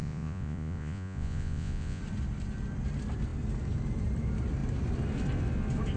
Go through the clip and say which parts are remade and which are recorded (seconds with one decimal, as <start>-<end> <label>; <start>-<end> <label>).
0.0-2.0 remade; 2.0-6.0 recorded